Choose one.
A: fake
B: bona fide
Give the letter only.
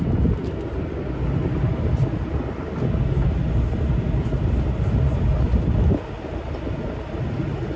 B